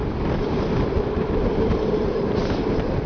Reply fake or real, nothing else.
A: real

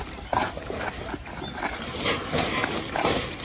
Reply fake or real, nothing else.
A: real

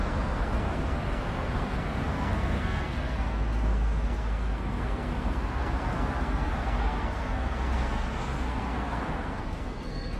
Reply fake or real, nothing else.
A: fake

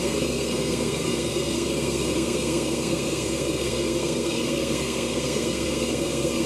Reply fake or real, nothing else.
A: fake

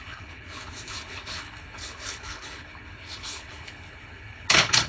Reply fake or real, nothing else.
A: fake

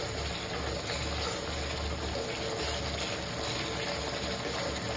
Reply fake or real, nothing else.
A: real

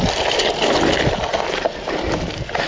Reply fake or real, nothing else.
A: real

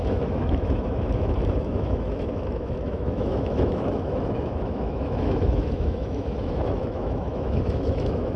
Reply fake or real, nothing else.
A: fake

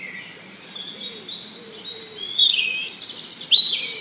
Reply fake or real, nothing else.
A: real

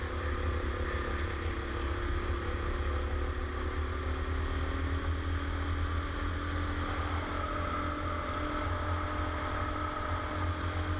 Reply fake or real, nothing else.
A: real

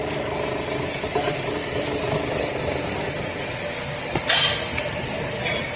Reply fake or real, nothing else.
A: real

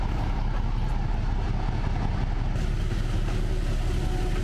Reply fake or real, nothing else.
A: real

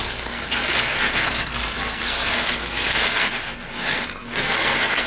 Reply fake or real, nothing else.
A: fake